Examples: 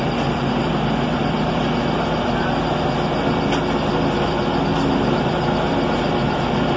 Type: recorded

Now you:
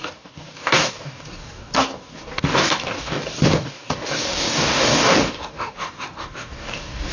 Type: remade